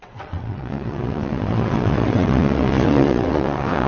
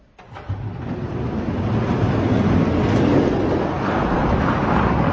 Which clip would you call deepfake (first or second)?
first